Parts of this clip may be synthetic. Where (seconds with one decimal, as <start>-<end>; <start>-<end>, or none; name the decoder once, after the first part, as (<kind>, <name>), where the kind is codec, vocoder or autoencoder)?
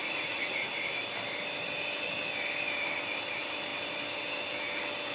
0.0-0.7 (vocoder, Vocos)